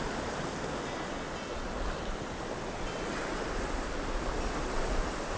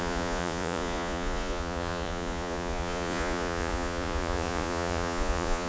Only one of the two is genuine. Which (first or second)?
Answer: first